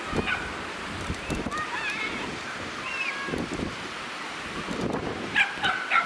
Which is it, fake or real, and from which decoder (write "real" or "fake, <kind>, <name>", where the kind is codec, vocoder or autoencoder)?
real